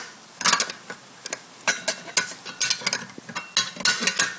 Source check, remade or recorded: recorded